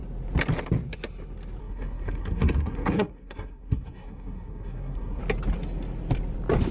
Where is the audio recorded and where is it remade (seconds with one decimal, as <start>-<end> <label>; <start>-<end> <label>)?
0.0-1.6 recorded; 1.6-5.2 remade; 5.2-6.7 recorded